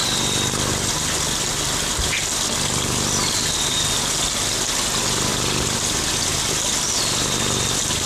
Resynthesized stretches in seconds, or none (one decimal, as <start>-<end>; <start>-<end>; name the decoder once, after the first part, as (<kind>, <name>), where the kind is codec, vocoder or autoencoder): none